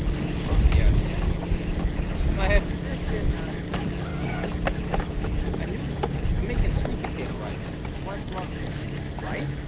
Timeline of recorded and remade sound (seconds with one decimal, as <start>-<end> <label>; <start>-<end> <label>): 0.0-9.7 recorded